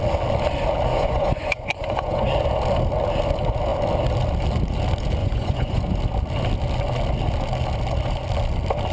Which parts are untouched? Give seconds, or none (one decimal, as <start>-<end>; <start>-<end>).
0.0-0.9; 2.3-5.2; 5.8-8.9